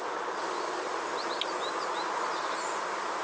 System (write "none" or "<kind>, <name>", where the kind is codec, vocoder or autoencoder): none